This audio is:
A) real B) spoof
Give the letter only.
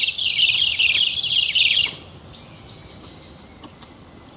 A